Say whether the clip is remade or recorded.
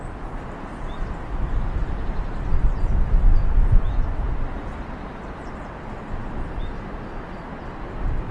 recorded